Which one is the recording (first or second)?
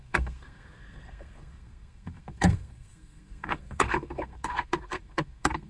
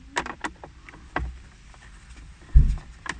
second